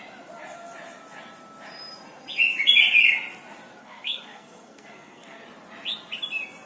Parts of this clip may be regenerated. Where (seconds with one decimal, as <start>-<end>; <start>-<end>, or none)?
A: 3.8-5.4